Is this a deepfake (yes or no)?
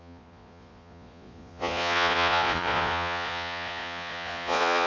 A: yes